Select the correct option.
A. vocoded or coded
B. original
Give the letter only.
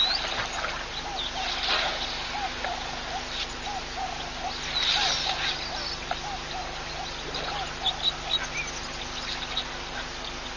B